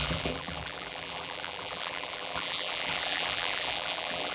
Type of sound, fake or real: fake